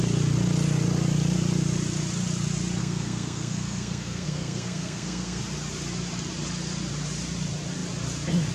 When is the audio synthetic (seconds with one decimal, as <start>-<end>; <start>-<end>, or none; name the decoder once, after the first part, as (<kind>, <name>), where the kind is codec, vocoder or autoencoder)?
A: 2.8-5.4 (codec, SNAC)